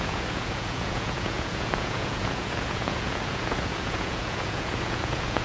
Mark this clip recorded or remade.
remade